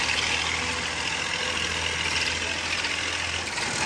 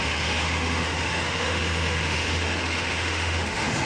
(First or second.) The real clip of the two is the first